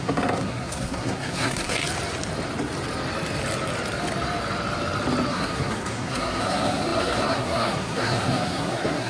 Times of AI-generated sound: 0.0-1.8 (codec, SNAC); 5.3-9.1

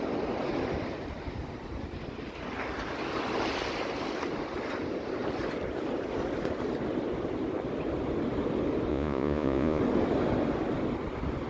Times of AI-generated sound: 8.9-9.8 (vocoder, Vocos)

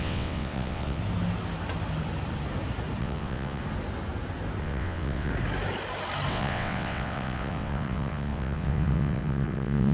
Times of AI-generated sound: 0.0-1.0 (vocoder, WaveNeXt); 3.0-3.6; 4.6-5.3; 6.3-9.9

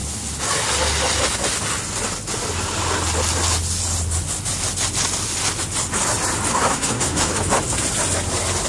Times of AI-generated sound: 6.5-7.3 (codec, SNAC)

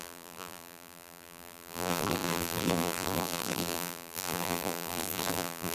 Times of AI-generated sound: 0.0-5.7 (vocoder, BigVGAN v2)

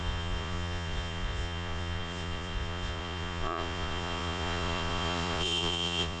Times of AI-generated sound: 0.0-6.2 (vocoder, Vocos)

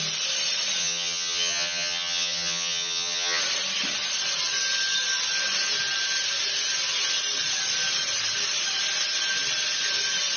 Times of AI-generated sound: 0.8-3.4 (vocoder, HiFi-GAN)